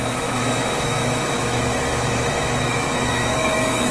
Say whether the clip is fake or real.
fake